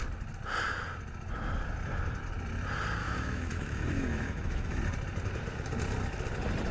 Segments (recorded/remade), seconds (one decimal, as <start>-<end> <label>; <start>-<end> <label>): 0.0-3.0 recorded; 3.0-4.8 remade; 4.8-6.7 recorded